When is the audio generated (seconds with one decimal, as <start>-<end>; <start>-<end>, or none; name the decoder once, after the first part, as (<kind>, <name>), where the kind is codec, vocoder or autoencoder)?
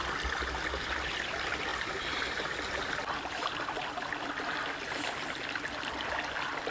none